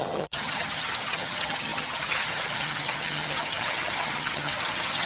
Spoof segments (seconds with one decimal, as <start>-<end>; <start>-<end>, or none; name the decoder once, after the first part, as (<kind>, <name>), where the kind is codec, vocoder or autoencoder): 0.0-5.1 (vocoder, HiFi-GAN)